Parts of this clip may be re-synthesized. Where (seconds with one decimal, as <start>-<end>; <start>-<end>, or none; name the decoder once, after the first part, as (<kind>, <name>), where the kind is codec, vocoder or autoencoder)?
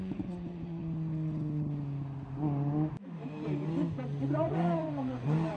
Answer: 0.0-0.8 (vocoder, Vocos); 4.2-5.6